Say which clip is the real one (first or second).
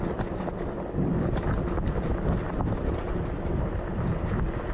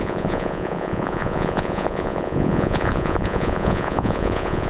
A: first